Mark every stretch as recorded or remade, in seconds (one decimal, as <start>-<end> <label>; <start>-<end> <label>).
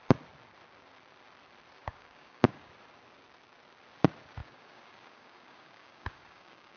0.0-1.8 recorded; 1.8-2.7 remade; 2.7-4.4 recorded; 4.4-6.8 remade